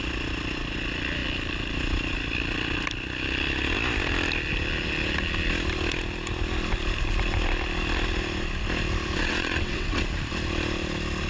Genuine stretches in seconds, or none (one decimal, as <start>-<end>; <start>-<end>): 0.0-9.2; 10.0-11.3